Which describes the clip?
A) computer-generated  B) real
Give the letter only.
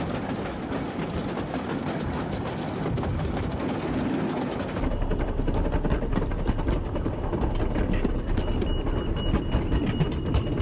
B